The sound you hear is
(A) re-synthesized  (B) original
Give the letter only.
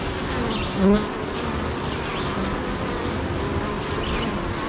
B